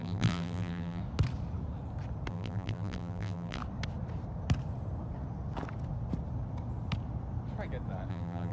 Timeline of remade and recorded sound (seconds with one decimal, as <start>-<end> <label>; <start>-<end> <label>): 0.0-1.0 remade; 1.0-2.3 recorded; 2.3-3.6 remade; 3.6-8.1 recorded; 8.1-8.5 remade

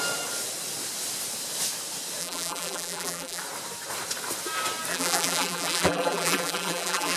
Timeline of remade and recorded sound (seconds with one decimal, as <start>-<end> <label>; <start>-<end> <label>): 0.0-2.2 recorded; 2.2-3.4 remade; 3.4-4.9 recorded; 4.9-7.2 remade

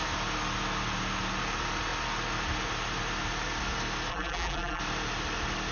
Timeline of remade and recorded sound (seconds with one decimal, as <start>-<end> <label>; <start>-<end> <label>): 0.0-4.1 recorded; 4.1-4.8 remade; 4.8-5.7 recorded

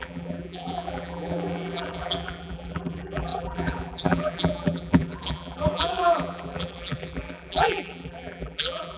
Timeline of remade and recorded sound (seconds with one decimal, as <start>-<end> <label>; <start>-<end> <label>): 0.0-9.0 remade

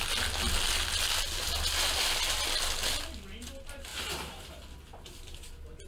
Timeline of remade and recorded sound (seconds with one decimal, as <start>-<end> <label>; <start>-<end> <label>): 0.0-3.9 recorded; 3.9-4.5 remade; 4.5-5.9 recorded

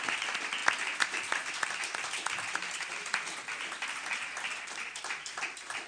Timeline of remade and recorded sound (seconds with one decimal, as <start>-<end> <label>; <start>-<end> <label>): 0.0-5.9 recorded